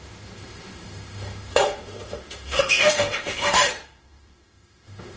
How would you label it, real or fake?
fake